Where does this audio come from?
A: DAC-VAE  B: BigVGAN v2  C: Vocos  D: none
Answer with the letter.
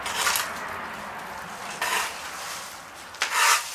D